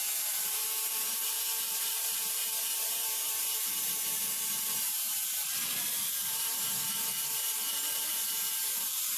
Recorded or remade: remade